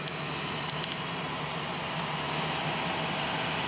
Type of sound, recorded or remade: recorded